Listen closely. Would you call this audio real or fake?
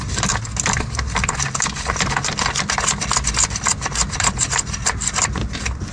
real